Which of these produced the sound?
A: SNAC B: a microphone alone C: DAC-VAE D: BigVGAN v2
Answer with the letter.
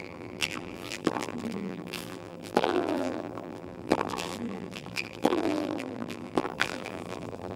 D